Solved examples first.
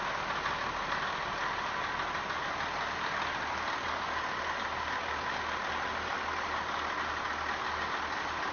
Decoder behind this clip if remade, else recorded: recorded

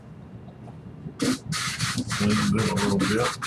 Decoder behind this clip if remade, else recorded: recorded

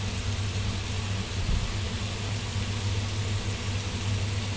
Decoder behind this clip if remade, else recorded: recorded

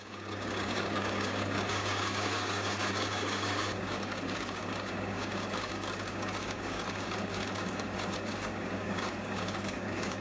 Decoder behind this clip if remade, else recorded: remade, codec, DAC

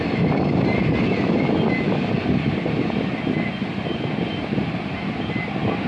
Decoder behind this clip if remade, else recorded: recorded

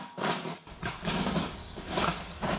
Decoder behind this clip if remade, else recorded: remade, codec, DAC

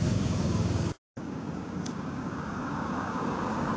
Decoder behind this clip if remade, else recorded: remade, codec, DAC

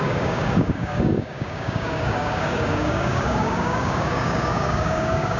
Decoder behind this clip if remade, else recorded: remade, codec, DAC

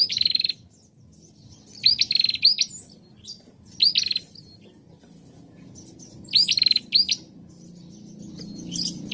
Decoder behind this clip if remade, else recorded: recorded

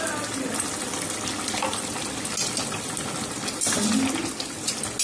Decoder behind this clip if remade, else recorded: recorded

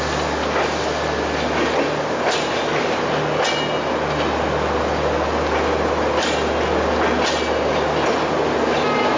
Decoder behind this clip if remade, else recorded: recorded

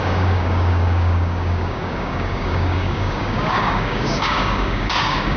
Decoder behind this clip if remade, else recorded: remade, codec, DAC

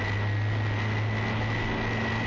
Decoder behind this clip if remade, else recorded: recorded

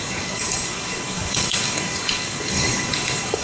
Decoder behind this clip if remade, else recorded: remade, codec, DAC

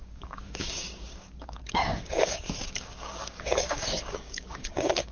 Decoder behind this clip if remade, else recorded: remade, codec, DAC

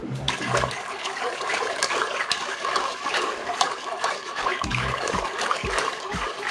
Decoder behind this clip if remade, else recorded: remade, codec, DAC